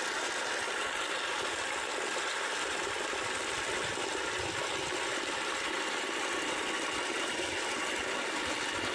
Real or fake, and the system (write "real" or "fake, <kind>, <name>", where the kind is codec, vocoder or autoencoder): real